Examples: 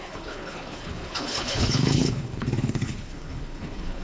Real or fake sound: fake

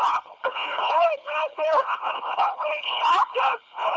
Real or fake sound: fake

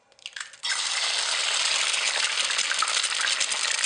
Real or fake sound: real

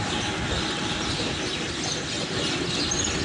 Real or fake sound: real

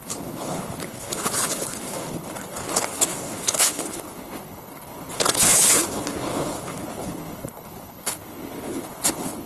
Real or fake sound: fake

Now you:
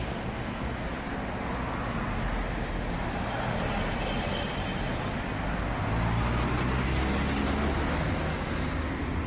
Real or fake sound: real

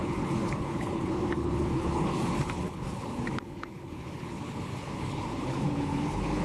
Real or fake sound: fake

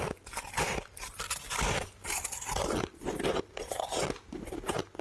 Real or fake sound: real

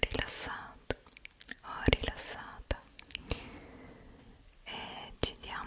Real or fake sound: real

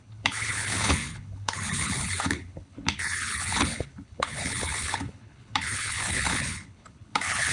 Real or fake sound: fake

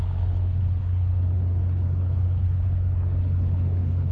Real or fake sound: fake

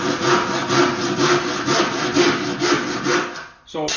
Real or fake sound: real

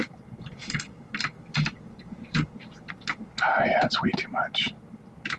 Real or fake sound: real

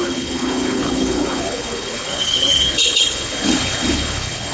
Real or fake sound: fake